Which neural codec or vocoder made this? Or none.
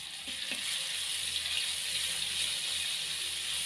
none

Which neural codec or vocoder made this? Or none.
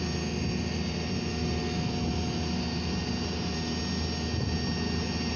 none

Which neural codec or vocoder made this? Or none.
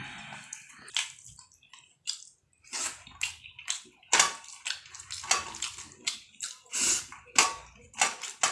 none